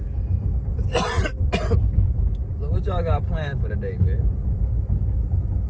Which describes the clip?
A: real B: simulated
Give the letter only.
A